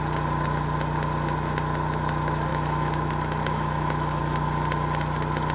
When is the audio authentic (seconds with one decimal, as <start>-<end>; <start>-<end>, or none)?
0.0-2.5; 4.2-5.5

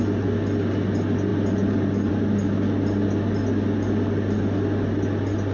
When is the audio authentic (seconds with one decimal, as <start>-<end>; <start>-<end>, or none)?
0.0-5.5

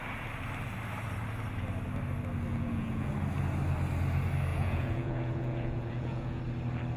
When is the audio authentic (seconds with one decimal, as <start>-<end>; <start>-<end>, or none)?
0.0-2.5; 3.1-4.5; 6.4-7.0